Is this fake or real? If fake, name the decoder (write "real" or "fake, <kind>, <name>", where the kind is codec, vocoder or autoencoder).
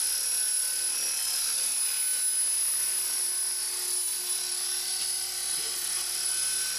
real